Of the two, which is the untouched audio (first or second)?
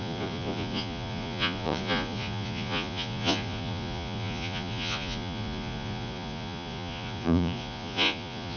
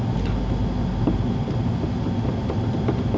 second